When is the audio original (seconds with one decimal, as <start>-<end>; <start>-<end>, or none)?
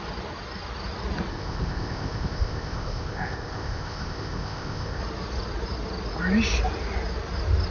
0.0-1.3; 5.0-7.7